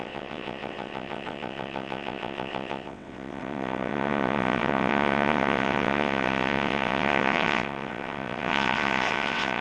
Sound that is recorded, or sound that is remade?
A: remade